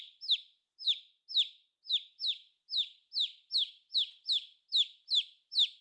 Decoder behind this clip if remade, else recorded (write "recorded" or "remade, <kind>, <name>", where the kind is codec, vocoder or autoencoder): recorded